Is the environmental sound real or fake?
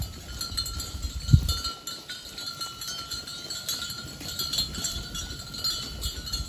real